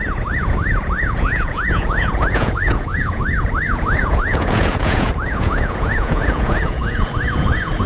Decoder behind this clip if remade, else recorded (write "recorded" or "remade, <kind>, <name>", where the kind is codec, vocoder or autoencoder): remade, vocoder, Vocos